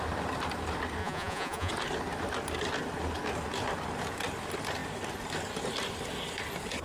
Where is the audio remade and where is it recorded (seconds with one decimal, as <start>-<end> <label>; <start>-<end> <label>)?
0.0-1.0 recorded; 1.0-1.7 remade; 1.7-6.8 recorded